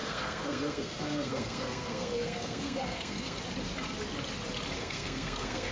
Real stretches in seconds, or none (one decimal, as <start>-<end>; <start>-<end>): 3.4-4.8